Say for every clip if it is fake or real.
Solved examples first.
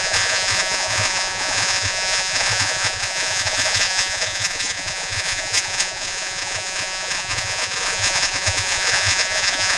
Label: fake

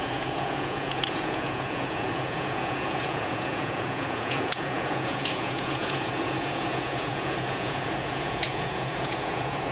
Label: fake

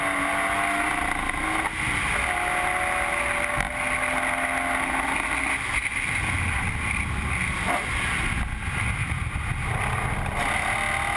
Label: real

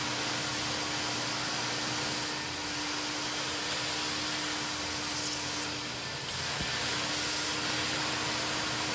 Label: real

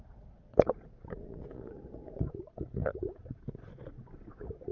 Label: fake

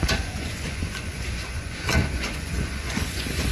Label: fake